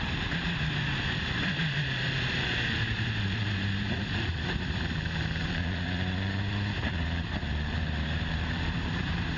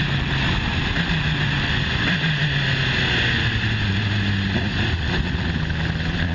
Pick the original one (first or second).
second